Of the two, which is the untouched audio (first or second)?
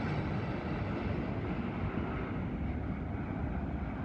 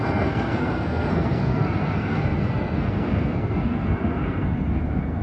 first